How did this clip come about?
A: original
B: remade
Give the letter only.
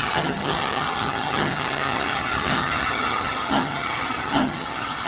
B